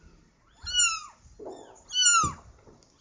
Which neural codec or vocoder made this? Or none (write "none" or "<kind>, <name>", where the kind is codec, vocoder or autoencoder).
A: none